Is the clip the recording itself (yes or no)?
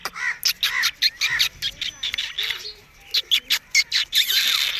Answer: yes